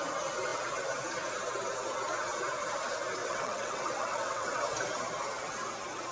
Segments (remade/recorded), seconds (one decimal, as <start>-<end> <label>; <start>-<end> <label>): 0.0-3.2 recorded; 3.2-4.6 remade; 4.6-6.1 recorded